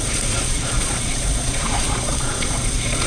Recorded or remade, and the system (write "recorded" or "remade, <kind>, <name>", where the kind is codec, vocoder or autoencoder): remade, vocoder, Vocos